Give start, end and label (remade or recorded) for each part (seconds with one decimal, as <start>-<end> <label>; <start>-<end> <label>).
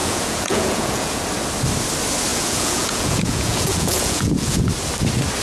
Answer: 0.0-1.2 remade; 1.2-2.3 recorded; 2.3-4.7 remade; 4.7-5.4 recorded